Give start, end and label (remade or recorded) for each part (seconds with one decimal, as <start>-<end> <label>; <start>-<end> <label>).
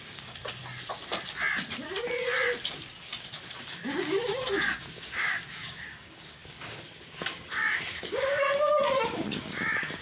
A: 0.0-0.6 remade; 0.6-3.5 recorded; 3.5-10.0 remade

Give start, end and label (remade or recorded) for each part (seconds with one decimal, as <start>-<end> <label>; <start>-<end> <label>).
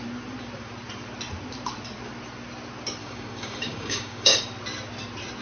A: 0.0-3.0 recorded; 3.0-4.4 remade; 4.4-5.4 recorded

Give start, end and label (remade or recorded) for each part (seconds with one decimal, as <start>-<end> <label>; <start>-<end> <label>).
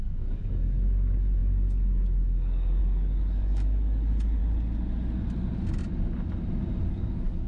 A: 0.0-4.4 remade; 4.4-6.9 recorded; 6.9-7.5 remade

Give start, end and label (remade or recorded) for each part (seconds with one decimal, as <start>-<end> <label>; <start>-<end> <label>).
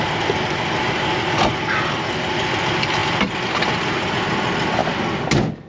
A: 0.0-5.7 recorded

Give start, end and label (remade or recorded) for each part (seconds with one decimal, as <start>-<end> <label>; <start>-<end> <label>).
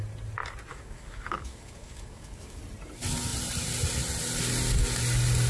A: 0.0-0.7 recorded; 0.7-2.6 remade; 2.6-5.5 recorded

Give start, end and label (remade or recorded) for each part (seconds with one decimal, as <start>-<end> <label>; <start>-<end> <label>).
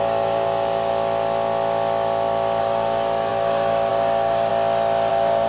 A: 0.0-0.9 remade; 0.9-2.6 recorded; 2.6-4.5 remade; 4.5-5.1 recorded; 5.1-5.5 remade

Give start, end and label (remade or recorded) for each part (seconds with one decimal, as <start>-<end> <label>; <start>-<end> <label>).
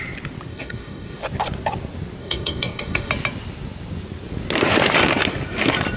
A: 0.0-0.5 recorded; 0.5-1.2 remade; 1.2-2.2 recorded; 2.2-3.1 remade; 3.1-6.0 recorded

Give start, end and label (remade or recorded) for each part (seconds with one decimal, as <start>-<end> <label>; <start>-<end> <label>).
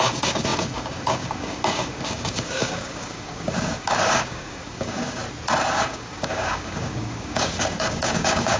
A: 0.0-5.2 remade; 5.2-5.7 recorded; 5.7-8.6 remade